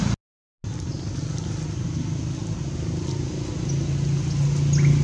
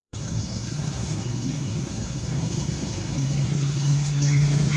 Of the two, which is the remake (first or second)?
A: second